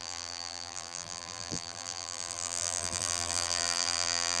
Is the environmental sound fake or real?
fake